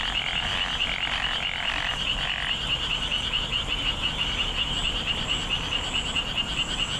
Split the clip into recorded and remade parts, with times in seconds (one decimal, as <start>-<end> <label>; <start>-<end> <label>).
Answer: 0.0-7.0 recorded